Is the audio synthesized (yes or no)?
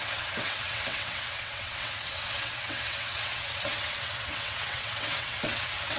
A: yes